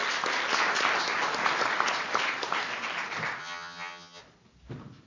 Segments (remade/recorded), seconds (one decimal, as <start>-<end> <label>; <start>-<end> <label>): 0.0-3.4 recorded; 3.4-4.2 remade; 4.2-5.1 recorded